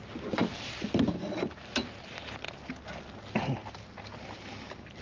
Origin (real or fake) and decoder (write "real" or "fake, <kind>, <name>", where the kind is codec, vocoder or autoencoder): real